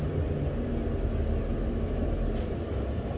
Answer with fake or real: real